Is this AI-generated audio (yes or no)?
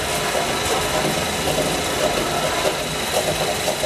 no